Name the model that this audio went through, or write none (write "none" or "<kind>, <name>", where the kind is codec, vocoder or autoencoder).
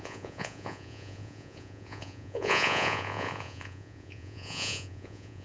vocoder, Vocos